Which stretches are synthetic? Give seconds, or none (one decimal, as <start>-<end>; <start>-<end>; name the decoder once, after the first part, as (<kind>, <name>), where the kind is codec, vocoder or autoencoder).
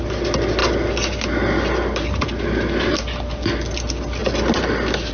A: none